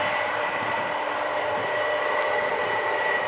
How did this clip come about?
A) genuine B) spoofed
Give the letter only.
A